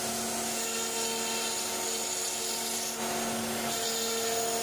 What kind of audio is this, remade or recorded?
recorded